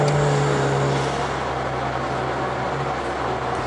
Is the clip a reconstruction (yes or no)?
no